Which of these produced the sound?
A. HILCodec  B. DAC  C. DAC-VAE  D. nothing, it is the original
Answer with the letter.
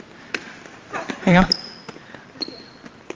D